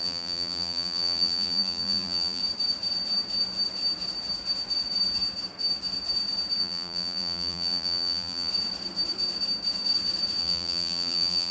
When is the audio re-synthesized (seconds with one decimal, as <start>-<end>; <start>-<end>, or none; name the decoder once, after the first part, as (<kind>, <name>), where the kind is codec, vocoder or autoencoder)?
0.0-2.4 (vocoder, BigVGAN v2); 6.6-8.5; 10.4-11.5